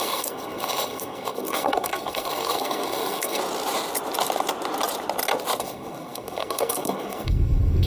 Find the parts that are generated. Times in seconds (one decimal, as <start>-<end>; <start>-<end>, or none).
0.0-3.4; 5.6-7.9

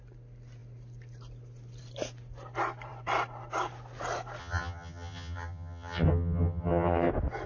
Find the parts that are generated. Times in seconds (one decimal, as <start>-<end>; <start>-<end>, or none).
4.4-7.1